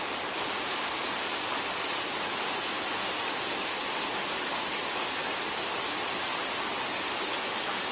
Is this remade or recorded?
recorded